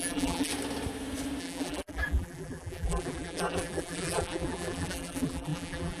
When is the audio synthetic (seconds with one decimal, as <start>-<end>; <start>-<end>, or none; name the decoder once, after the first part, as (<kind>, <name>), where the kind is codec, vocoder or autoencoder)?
0.0-0.5 (vocoder, BigVGAN v2); 1.4-6.0

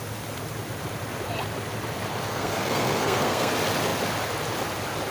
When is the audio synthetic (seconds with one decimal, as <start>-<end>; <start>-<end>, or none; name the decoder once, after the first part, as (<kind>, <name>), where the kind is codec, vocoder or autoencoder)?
2.3-3.5 (codec, SNAC)

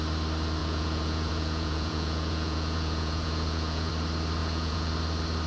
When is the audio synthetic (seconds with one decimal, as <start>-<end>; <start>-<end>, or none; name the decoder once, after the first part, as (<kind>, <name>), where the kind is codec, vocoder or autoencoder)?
0.6-3.9 (vocoder, Vocos); 4.4-4.9

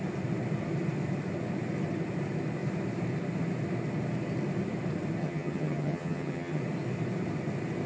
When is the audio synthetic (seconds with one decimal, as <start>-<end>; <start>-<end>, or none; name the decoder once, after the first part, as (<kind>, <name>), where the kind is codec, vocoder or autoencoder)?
5.2-6.6 (vocoder, HiFi-GAN)

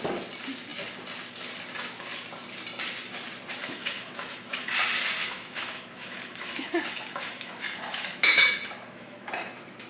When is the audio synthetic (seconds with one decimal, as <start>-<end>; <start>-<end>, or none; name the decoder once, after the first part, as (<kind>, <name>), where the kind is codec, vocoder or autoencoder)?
3.6-4.7 (autoencoder, DAC-VAE); 5.2-9.3

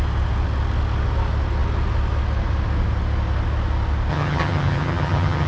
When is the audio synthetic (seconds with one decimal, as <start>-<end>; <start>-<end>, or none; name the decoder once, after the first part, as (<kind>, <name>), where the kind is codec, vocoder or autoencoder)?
4.1-5.5 (vocoder, HiFi-GAN)